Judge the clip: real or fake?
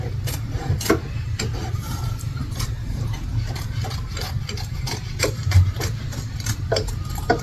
fake